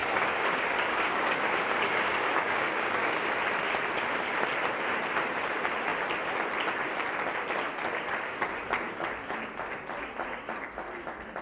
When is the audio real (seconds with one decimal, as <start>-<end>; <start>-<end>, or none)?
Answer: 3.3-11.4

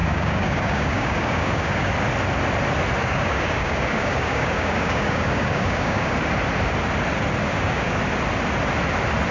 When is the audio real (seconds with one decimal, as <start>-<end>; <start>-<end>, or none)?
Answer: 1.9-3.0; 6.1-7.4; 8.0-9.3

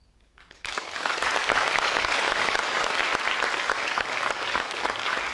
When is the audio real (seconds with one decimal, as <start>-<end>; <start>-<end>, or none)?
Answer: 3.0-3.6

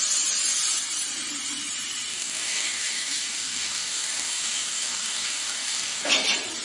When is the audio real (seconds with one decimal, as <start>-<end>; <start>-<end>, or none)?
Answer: 0.0-2.1; 6.1-6.6

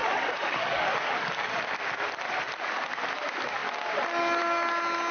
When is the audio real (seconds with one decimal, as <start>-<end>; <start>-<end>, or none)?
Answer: 1.8-5.1

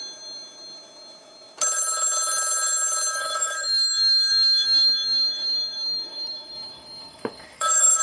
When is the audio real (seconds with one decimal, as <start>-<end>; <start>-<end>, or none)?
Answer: 0.0-3.1

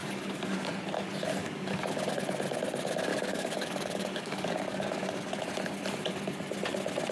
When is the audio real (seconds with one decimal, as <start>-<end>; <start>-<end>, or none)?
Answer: 0.7-1.4; 2.1-3.1; 5.4-7.1

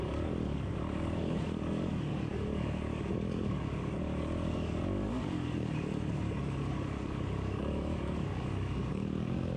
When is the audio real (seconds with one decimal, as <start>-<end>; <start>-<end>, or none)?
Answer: none